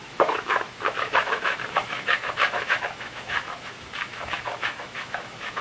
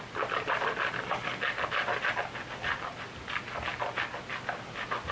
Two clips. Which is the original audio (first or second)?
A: second